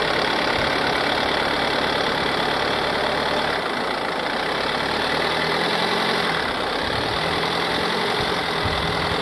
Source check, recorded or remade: recorded